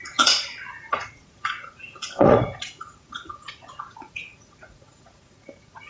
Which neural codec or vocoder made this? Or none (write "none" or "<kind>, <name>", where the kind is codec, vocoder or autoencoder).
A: vocoder, Vocos